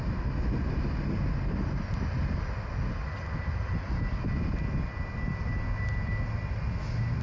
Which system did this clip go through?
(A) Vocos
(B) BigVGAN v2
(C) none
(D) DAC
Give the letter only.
C